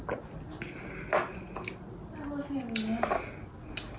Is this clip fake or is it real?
real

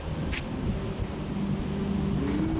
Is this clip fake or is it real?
real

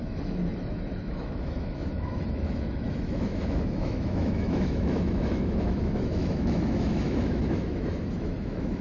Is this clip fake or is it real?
fake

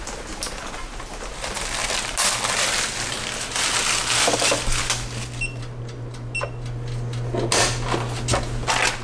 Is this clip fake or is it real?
real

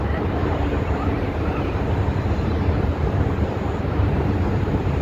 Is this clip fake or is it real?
fake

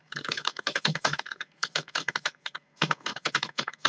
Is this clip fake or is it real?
fake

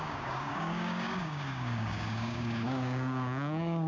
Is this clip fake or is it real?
fake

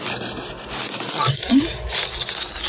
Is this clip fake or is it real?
real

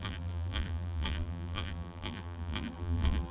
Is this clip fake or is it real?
fake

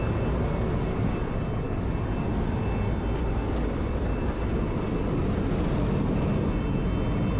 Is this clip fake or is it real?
real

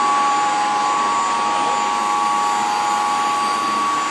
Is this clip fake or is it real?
real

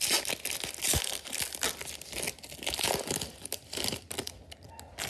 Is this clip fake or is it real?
real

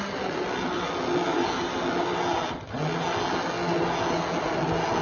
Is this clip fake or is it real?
real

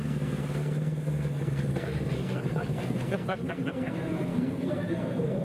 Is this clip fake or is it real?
fake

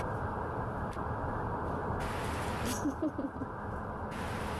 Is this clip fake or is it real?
real